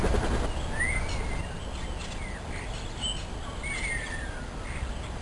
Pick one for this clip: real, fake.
real